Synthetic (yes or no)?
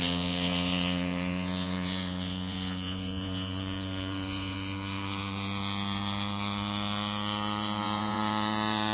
yes